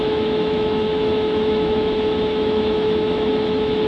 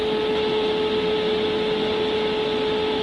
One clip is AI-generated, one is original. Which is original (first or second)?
second